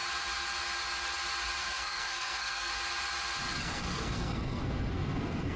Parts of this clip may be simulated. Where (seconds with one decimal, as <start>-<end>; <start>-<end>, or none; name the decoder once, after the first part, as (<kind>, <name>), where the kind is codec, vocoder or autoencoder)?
1.6-2.7 (codec, SNAC); 3.6-5.6